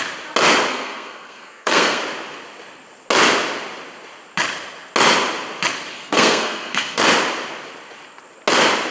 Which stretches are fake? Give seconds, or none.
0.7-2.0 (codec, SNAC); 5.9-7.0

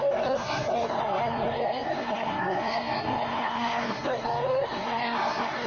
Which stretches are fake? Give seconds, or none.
0.0-5.7 (codec, SNAC)

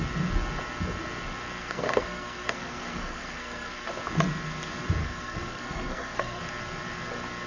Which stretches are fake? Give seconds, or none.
1.6-3.9 (codec, SNAC); 5.0-6.4